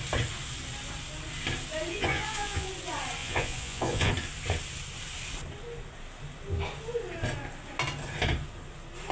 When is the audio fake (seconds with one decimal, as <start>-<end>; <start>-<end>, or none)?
1.9-2.7; 3.2-4.1

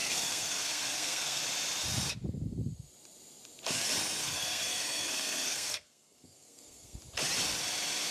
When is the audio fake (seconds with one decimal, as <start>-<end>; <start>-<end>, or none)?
0.0-1.4; 4.2-7.0

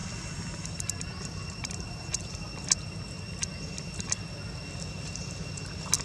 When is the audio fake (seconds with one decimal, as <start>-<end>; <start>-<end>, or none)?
0.0-2.1